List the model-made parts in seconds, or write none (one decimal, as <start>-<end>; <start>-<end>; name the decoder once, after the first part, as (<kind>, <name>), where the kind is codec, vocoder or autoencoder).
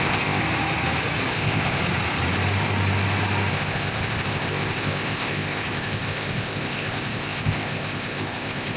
0.0-0.4 (codec, ZipCodec); 1.3-1.8; 3.5-8.8